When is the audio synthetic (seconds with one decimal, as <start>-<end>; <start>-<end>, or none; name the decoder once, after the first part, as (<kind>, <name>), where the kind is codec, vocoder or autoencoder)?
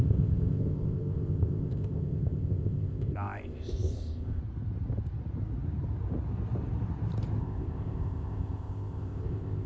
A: 0.0-4.4 (codec, ZipCodec); 7.4-9.7